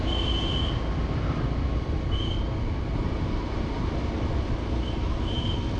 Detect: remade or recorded recorded